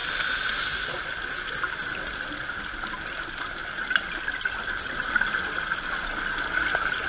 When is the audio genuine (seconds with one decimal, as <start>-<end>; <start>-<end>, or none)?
0.0-7.1